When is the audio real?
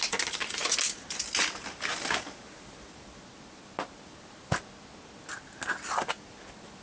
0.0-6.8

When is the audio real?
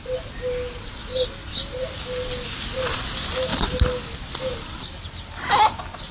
0.0-6.1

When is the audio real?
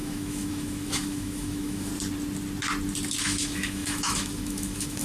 1.9-3.2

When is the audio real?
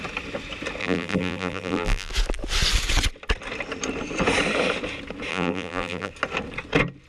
0.0-0.8; 2.1-5.3; 6.1-7.1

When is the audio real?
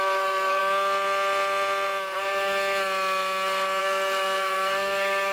0.6-3.8